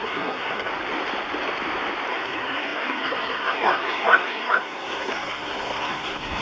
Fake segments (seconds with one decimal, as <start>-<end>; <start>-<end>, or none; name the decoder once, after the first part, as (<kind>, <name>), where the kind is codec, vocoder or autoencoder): 0.0-0.7 (codec, SNAC); 2.1-6.4